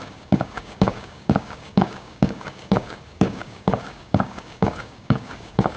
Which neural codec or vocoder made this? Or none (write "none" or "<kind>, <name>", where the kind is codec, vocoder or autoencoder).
codec, DAC